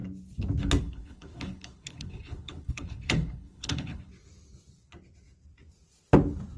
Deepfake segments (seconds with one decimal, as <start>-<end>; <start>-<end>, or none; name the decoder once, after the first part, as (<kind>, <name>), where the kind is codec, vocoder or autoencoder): 0.8-4.1 (codec, HILCodec)